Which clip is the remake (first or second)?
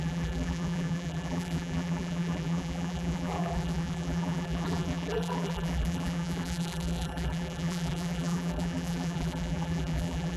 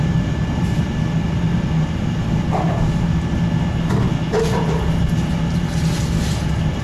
first